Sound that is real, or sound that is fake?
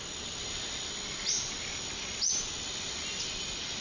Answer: real